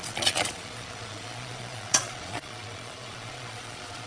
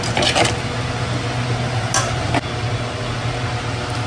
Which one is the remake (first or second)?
first